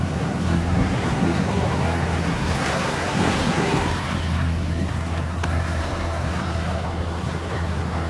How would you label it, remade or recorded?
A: remade